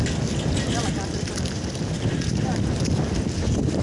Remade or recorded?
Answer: recorded